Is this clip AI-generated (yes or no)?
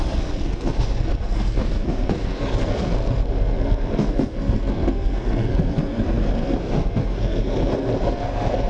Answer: yes